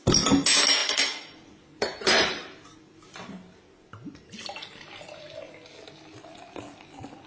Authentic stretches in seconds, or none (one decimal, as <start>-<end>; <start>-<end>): 0.0-0.8; 5.2-7.3